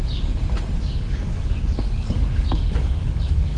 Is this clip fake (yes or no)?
yes